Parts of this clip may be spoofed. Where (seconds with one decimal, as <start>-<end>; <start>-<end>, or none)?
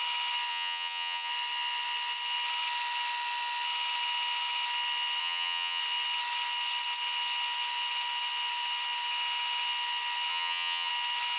0.5-1.3; 5.2-5.8; 10.3-10.9